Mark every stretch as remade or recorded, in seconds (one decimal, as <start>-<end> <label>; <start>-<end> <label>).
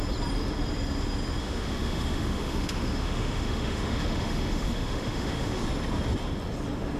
0.0-1.4 recorded; 1.4-5.6 remade; 5.6-7.0 recorded